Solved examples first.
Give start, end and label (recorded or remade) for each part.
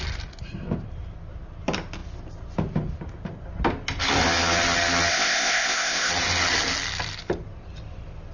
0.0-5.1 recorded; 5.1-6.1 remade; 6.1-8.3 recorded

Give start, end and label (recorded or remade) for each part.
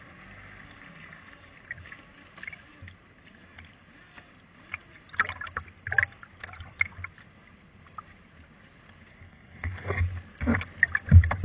0.0-9.1 recorded; 9.1-10.0 remade; 10.0-11.4 recorded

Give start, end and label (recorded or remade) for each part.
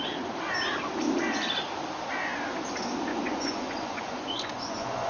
0.0-3.1 recorded; 3.1-5.1 remade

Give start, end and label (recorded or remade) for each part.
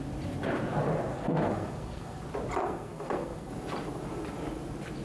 0.0-1.1 recorded; 1.1-2.2 remade; 2.2-2.6 recorded; 2.6-3.5 remade; 3.5-5.0 recorded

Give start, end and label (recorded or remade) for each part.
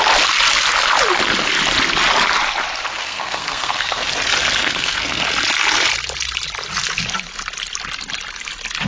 0.0-2.9 recorded; 2.9-4.1 remade; 4.1-4.6 recorded; 4.6-5.2 remade; 5.2-8.9 recorded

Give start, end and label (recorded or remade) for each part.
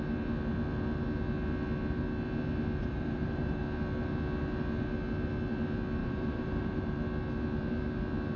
0.0-2.8 recorded; 2.8-3.6 remade; 3.6-6.0 recorded; 6.0-7.0 remade; 7.0-8.4 recorded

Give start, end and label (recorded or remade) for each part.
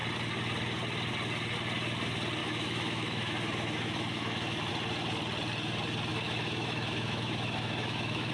0.0-2.4 recorded; 2.4-4.7 remade; 4.7-6.1 recorded; 6.1-8.3 remade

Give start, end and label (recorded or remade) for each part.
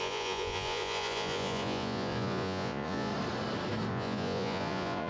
0.0-3.1 remade; 3.1-3.9 recorded; 3.9-5.1 remade